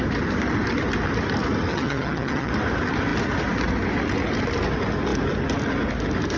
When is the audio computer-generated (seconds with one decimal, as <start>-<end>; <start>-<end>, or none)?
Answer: 1.7-2.5